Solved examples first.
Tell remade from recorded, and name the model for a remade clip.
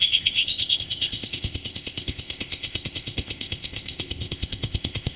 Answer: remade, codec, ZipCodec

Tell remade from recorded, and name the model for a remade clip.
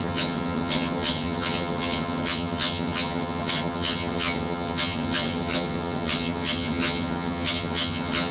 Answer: remade, vocoder, HiFi-GAN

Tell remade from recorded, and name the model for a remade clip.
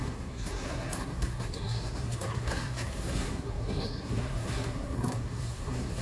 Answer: remade, codec, SNAC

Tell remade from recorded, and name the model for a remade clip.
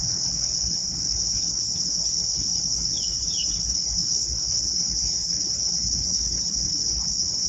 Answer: remade, codec, HILCodec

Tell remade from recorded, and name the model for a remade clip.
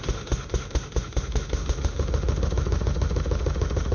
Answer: remade, autoencoder, DAC-VAE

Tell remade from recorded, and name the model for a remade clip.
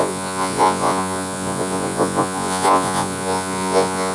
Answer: remade, vocoder, Vocos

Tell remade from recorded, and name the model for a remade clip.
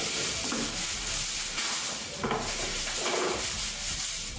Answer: recorded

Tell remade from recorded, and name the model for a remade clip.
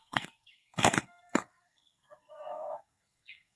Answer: remade, codec, SNAC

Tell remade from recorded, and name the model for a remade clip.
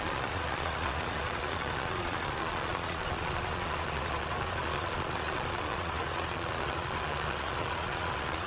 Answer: remade, vocoder, Vocos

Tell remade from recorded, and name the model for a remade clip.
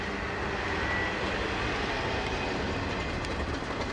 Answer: recorded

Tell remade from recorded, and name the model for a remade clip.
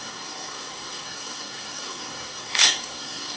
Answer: remade, codec, SNAC